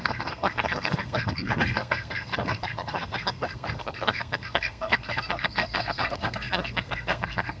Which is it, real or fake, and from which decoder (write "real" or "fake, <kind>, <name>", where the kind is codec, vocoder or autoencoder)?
fake, codec, SNAC